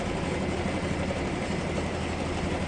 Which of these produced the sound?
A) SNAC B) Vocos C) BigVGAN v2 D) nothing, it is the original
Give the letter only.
C